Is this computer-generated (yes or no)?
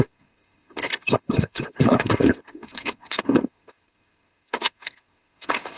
yes